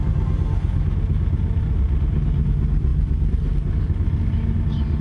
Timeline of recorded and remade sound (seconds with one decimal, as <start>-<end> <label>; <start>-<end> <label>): 0.0-5.0 recorded